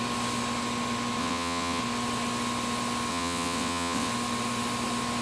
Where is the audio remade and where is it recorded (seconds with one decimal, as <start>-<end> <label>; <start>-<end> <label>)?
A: 0.0-1.2 recorded; 1.2-1.8 remade; 1.8-3.1 recorded; 3.1-4.1 remade; 4.1-5.2 recorded